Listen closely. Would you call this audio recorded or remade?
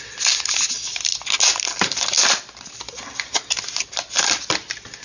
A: recorded